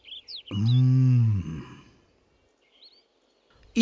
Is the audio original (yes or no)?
yes